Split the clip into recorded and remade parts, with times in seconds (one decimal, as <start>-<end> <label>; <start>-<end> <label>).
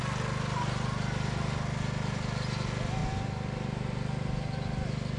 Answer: 0.0-5.2 recorded